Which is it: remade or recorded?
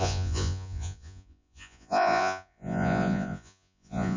remade